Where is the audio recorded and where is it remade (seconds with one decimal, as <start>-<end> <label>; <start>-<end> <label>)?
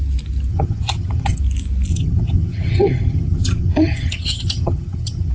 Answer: 0.0-0.5 recorded; 0.5-1.4 remade; 1.4-1.9 recorded; 1.9-5.3 remade